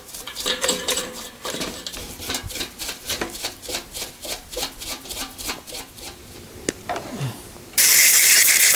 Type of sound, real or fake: fake